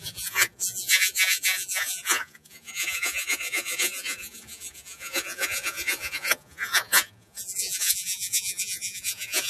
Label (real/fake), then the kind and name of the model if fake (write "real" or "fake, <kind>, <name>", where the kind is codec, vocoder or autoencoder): fake, vocoder, Vocos